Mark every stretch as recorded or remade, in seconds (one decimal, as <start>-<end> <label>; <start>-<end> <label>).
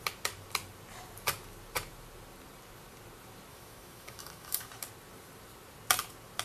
0.0-3.5 recorded; 3.5-4.7 remade; 4.7-6.4 recorded